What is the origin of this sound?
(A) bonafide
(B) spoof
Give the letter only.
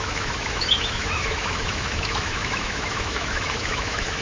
B